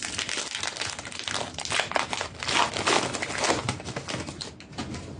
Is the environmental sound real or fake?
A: real